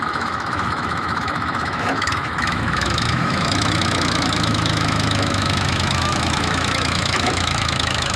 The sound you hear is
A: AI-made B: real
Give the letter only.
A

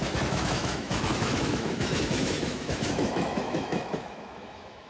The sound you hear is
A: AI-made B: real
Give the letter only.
A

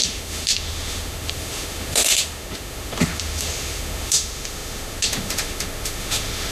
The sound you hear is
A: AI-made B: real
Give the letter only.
A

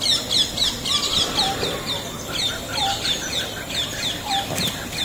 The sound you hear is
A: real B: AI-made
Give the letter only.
A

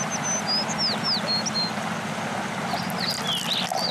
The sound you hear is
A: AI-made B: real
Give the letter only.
B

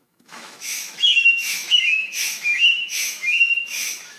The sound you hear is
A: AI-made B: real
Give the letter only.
A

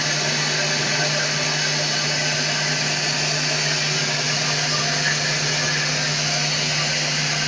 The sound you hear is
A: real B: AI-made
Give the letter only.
A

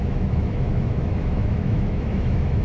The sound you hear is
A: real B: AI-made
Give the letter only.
B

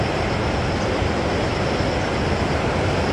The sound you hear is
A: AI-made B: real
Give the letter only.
B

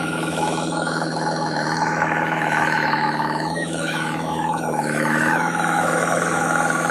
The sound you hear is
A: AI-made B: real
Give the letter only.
A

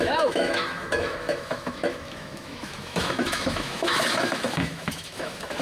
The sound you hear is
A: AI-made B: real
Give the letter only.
A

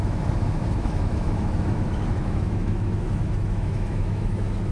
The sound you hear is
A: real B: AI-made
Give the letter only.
B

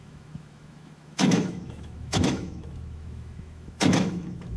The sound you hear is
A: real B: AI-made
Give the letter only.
B